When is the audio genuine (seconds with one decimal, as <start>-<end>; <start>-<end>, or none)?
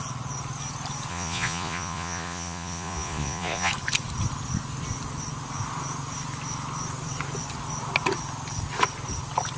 0.0-1.1; 3.7-9.6